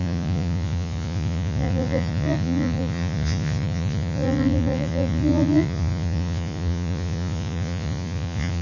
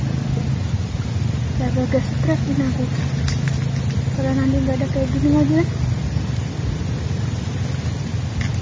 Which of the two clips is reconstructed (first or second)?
first